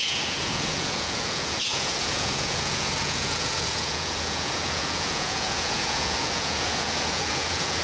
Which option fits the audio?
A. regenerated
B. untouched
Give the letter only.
A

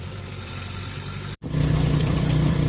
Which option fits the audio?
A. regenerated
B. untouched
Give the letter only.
A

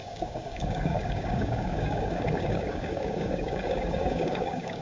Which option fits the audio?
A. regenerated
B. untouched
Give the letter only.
A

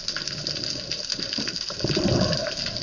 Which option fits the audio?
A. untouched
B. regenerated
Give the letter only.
A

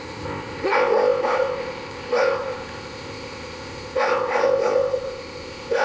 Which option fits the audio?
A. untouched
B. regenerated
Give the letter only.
B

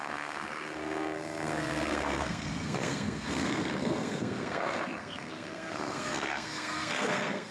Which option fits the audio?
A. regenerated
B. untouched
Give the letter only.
A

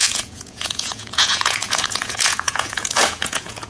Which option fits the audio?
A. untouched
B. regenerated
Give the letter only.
B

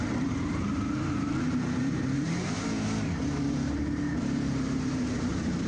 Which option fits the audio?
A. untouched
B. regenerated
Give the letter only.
B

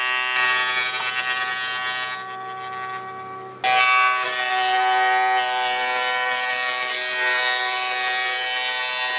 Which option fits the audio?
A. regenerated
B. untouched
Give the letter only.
B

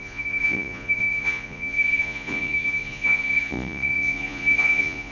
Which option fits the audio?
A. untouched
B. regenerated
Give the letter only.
B